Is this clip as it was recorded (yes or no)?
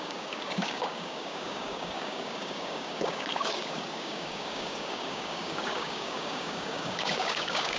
no